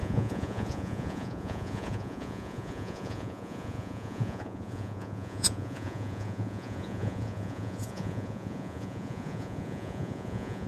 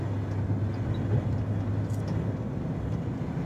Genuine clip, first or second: second